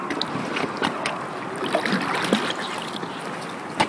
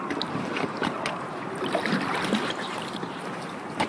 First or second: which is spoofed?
second